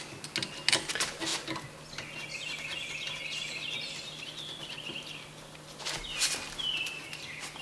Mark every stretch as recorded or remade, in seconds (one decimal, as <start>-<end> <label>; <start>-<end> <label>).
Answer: 0.0-7.6 recorded